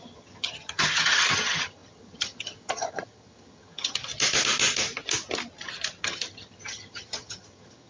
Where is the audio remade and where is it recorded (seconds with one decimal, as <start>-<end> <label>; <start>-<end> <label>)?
0.0-4.0 remade; 4.0-6.0 recorded; 6.0-7.9 remade